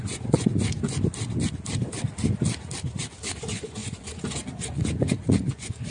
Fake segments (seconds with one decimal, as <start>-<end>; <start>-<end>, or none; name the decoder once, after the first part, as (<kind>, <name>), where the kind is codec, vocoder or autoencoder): 0.0-0.7 (vocoder, Vocos); 3.3-5.9